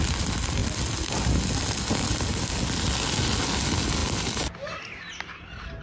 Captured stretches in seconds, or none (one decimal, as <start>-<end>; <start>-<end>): 0.0-4.0; 4.5-5.8